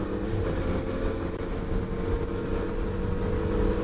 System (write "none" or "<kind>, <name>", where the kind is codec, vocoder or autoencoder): none